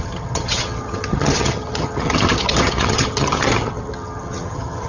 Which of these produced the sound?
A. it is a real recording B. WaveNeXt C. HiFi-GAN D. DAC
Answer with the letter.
C